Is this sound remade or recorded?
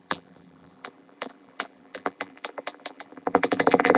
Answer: remade